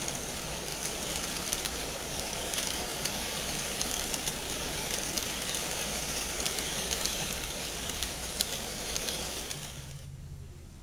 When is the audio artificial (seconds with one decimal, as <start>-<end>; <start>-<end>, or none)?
0.0-0.7; 1.5-10.8